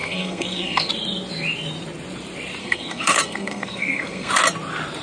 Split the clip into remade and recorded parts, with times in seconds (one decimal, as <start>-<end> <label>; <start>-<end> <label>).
0.0-0.9 remade; 0.9-2.6 recorded; 2.6-4.3 remade; 4.3-5.0 recorded